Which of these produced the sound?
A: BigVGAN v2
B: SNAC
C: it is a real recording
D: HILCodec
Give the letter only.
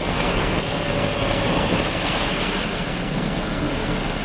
B